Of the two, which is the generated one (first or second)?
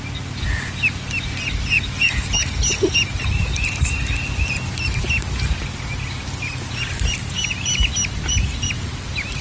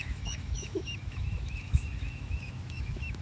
second